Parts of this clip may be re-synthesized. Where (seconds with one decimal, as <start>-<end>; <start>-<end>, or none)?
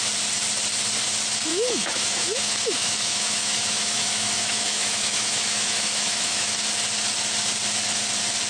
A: 1.5-6.5